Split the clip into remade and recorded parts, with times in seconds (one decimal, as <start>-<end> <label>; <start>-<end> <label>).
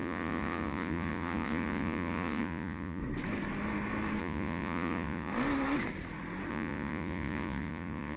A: 0.0-3.0 remade; 3.0-4.2 recorded; 4.2-5.3 remade; 5.3-6.5 recorded; 6.5-8.2 remade